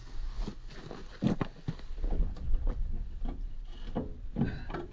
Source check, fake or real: real